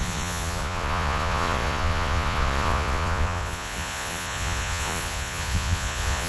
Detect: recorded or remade remade